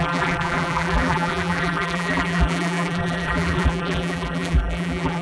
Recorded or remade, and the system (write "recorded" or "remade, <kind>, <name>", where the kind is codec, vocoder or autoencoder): remade, vocoder, BigVGAN v2